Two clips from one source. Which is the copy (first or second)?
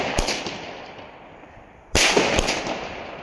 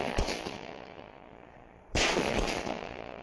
second